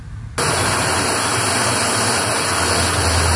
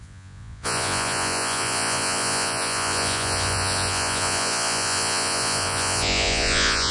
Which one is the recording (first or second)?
first